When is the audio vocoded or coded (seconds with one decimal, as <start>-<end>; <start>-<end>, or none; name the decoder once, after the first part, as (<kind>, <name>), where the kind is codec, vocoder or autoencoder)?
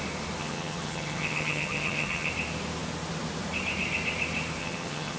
0.4-2.3 (vocoder, HiFi-GAN); 4.6-5.2